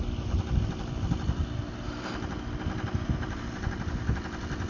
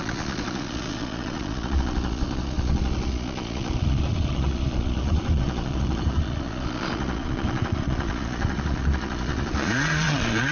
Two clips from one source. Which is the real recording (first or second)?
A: first